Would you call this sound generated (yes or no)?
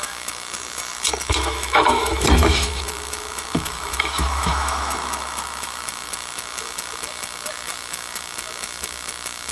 yes